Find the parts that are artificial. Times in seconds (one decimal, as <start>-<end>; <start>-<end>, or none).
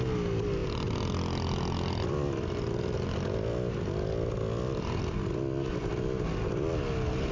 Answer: none